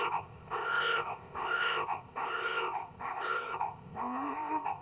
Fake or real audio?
fake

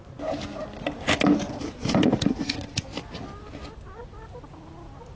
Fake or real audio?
real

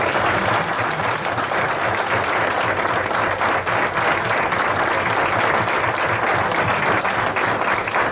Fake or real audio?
real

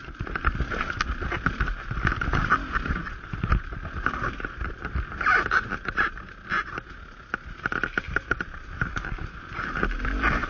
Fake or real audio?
real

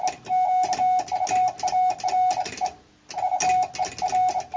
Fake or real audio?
real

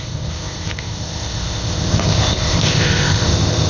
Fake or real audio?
fake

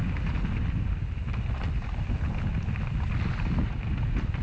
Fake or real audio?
real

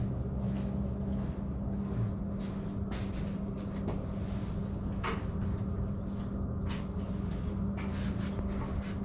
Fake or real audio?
real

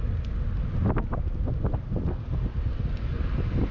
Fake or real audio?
real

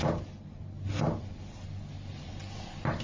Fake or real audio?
real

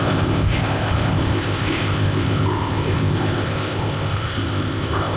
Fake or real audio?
fake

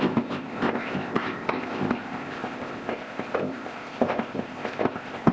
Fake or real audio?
fake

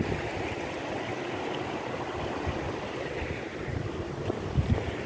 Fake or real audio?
real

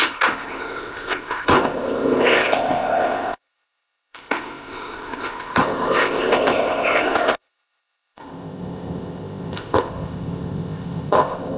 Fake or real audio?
fake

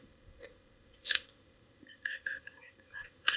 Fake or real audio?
fake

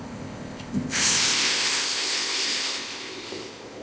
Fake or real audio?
fake